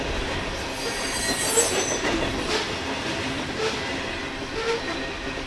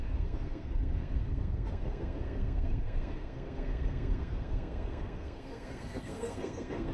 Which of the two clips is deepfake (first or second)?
second